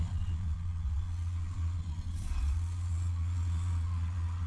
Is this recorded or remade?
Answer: remade